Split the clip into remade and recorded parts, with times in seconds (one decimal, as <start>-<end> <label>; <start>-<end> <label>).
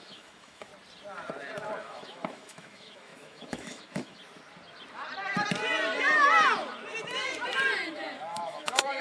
0.0-0.7 remade; 0.7-1.8 recorded; 1.8-4.2 remade; 4.2-8.3 recorded; 8.3-9.0 remade